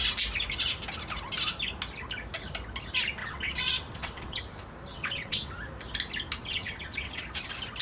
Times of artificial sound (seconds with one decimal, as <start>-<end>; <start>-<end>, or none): 3.2-4.4; 4.9-5.5; 6.4-7.2